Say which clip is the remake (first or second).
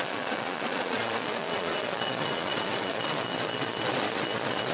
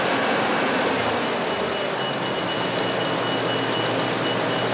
first